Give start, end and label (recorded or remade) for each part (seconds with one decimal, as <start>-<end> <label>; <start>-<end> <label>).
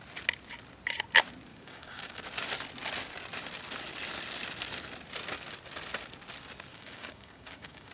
0.0-1.5 recorded; 1.5-2.2 remade; 2.2-6.7 recorded; 6.7-7.9 remade